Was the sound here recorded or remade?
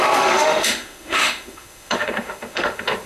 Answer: remade